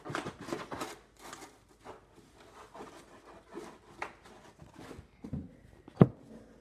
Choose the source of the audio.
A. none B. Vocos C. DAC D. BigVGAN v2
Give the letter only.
A